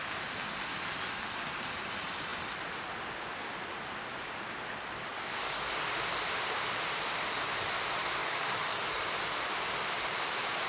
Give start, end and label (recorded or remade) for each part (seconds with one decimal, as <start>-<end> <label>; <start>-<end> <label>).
0.0-5.1 recorded; 5.1-5.7 remade; 5.7-8.2 recorded; 8.2-9.0 remade; 9.0-10.7 recorded